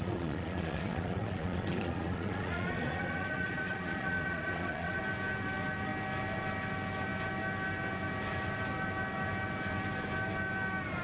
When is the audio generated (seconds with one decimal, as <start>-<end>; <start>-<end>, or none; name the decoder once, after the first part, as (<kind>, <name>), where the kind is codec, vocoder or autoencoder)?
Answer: 0.0-5.0 (vocoder, Vocos)

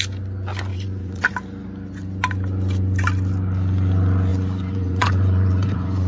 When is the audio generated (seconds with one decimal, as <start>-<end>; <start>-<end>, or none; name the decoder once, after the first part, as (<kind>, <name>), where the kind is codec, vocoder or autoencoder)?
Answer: 0.7-1.2 (vocoder, Vocos); 4.3-6.1